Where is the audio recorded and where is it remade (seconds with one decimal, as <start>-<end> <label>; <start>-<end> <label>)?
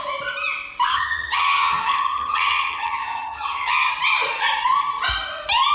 0.0-0.9 recorded; 0.9-3.9 remade; 3.9-5.7 recorded